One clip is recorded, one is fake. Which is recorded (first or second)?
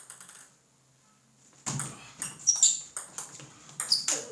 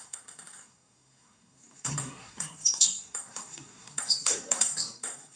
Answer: first